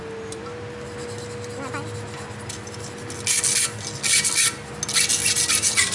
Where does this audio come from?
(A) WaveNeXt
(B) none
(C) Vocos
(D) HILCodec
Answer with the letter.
B